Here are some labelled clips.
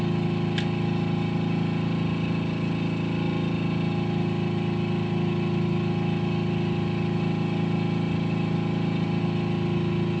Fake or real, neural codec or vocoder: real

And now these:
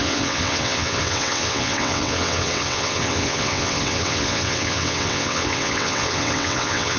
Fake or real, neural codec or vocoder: fake, vocoder, WaveNeXt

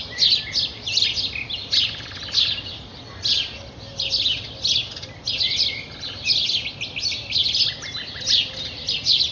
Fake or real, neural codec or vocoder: real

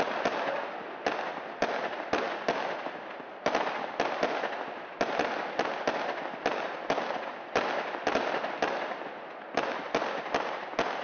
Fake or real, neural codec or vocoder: real